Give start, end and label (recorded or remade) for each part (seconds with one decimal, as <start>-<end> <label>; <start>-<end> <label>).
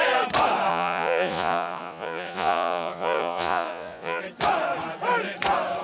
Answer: 0.0-0.7 recorded; 0.7-4.2 remade; 4.2-5.8 recorded